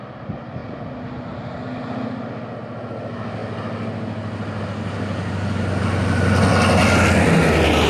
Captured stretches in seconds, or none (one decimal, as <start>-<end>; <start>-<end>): 0.0-7.9